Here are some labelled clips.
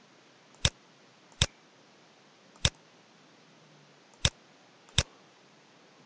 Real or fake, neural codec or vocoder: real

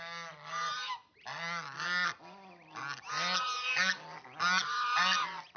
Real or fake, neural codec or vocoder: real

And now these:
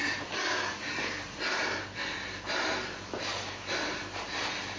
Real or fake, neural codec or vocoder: real